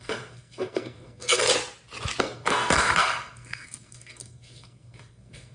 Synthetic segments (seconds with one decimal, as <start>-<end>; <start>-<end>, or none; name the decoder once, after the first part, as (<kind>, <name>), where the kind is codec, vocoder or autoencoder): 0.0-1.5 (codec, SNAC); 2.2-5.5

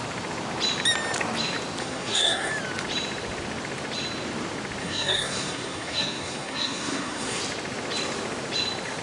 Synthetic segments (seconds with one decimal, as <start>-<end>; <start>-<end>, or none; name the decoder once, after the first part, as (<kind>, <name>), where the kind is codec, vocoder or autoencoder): 1.8-2.5 (codec, SNAC); 4.8-7.4

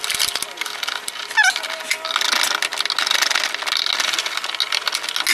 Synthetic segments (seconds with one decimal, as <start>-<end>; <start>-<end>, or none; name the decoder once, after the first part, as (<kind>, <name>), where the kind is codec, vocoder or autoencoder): none

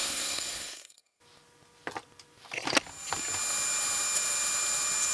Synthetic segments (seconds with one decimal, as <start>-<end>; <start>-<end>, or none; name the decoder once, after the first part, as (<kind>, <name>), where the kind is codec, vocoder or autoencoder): 0.0-1.2 (codec, SNAC)